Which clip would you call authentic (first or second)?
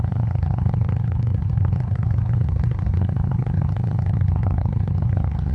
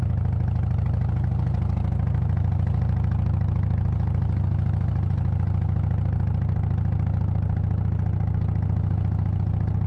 second